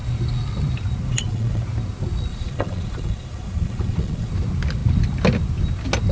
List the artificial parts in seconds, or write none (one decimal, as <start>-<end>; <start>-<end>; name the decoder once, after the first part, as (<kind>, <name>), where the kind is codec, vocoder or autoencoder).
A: 1.1-1.6 (vocoder, Vocos); 2.3-4.3